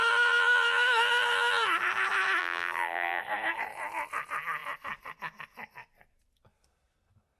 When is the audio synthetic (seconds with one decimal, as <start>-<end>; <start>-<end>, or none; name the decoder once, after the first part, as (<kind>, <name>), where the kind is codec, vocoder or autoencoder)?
2.4-3.2 (vocoder, BigVGAN v2)